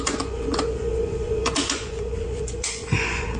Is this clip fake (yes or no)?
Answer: yes